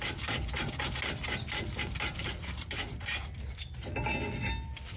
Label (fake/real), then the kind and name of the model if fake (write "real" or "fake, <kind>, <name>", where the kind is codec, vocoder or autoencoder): real